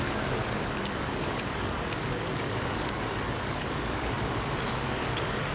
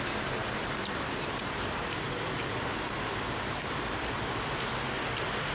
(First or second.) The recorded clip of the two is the second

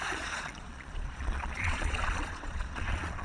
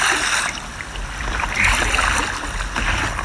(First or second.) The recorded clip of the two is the second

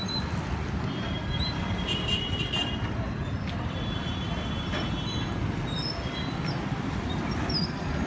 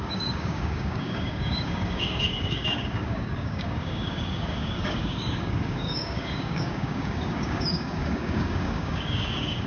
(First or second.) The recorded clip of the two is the first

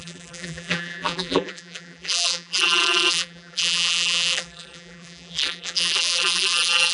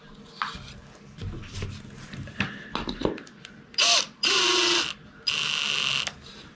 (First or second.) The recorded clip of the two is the second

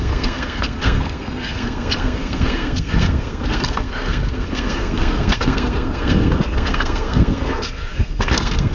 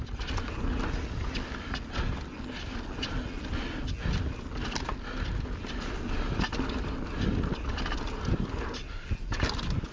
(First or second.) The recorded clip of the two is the second